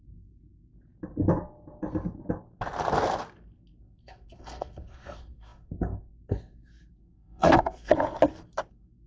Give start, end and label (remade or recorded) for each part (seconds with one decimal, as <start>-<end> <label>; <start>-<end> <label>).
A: 0.0-0.4 remade; 0.4-3.8 recorded; 3.8-7.9 remade; 7.9-8.7 recorded; 8.7-9.1 remade

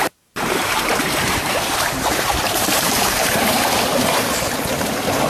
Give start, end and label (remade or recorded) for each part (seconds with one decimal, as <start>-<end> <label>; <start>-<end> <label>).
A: 0.0-5.3 remade

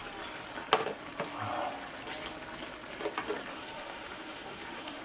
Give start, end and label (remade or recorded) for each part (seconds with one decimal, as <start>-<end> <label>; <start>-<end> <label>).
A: 0.0-3.5 recorded; 3.5-5.0 remade

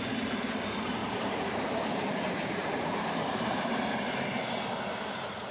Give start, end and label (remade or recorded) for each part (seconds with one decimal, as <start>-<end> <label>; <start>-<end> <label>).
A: 0.0-1.0 recorded; 1.0-3.6 remade; 3.6-5.5 recorded

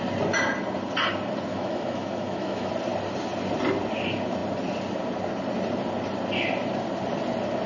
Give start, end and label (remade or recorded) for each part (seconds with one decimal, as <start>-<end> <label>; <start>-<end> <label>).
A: 0.0-1.5 recorded; 1.5-2.7 remade; 2.7-7.7 recorded